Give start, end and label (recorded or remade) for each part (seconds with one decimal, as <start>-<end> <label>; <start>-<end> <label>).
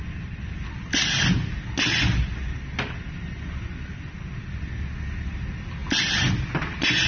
0.0-7.1 recorded